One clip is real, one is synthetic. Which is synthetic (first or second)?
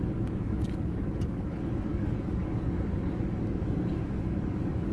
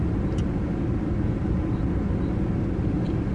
first